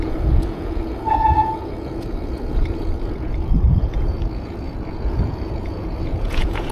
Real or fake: fake